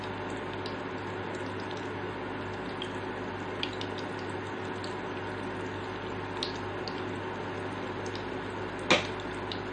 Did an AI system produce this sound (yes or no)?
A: no